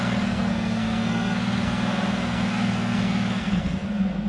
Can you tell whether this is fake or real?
fake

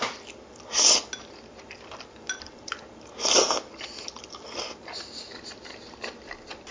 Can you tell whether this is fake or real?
real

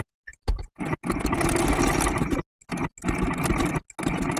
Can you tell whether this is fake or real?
real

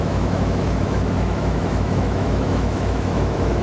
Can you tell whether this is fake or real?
fake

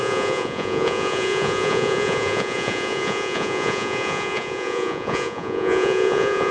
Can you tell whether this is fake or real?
fake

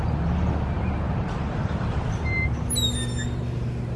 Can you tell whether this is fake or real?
real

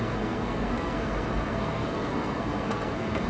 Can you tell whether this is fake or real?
fake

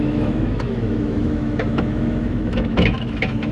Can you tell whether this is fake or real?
fake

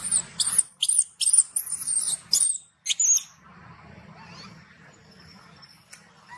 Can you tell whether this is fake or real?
real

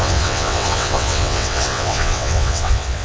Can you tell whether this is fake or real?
fake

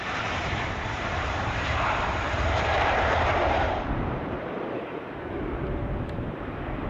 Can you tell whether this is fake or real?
fake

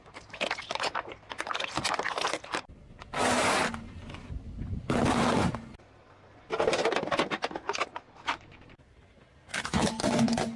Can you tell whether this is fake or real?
real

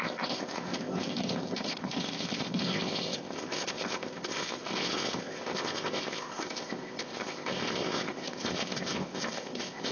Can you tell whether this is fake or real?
fake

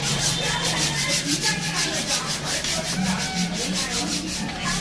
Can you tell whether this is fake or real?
real